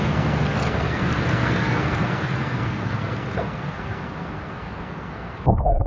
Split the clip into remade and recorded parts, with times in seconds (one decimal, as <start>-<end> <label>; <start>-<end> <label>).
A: 0.0-5.9 remade